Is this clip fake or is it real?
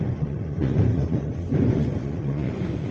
fake